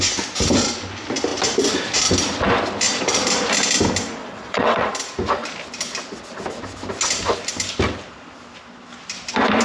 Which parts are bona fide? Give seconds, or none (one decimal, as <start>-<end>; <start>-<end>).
0.0-4.2; 4.9-9.6

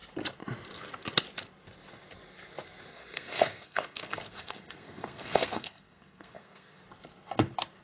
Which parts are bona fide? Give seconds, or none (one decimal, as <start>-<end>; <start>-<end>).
0.0-2.9; 6.8-7.8

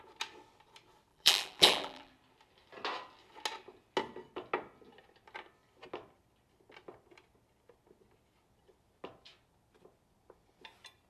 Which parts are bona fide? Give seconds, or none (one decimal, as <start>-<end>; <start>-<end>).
0.0-1.1; 2.1-11.1

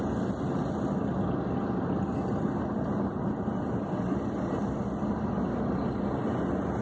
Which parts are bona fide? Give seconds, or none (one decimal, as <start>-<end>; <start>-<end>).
0.0-6.8

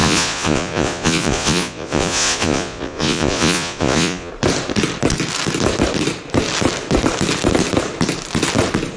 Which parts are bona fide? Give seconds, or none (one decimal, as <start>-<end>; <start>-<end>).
4.3-9.0

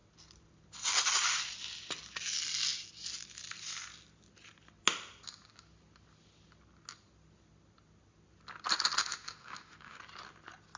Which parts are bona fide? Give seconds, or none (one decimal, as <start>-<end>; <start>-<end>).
0.0-9.0; 10.0-10.8